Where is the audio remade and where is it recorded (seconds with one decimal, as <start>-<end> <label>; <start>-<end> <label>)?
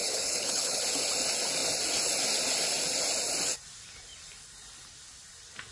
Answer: 0.0-0.8 remade; 0.8-5.7 recorded